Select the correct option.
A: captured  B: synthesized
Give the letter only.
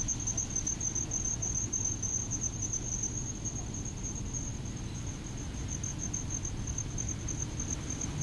A